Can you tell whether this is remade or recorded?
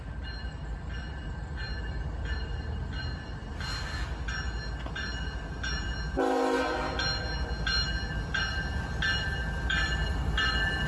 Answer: recorded